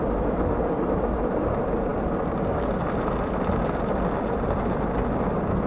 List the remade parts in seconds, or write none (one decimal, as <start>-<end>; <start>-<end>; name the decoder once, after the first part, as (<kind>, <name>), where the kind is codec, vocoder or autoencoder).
none